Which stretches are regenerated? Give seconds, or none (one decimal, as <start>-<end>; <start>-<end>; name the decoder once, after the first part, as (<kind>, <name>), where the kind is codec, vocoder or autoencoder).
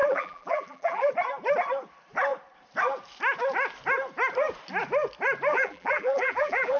0.0-1.1 (vocoder, BigVGAN v2); 5.5-6.8